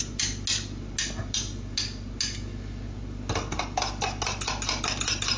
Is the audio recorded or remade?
recorded